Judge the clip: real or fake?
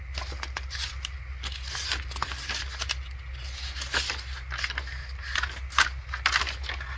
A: real